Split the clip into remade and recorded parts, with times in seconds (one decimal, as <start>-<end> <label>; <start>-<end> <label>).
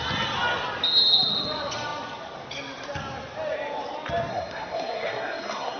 0.0-4.3 recorded; 4.3-5.8 remade